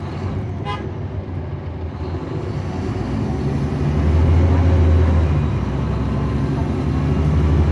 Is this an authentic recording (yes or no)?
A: yes